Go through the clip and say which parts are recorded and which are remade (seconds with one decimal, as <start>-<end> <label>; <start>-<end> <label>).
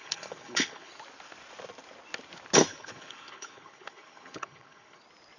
0.0-0.9 remade; 0.9-2.7 recorded; 2.7-5.0 remade; 5.0-5.4 recorded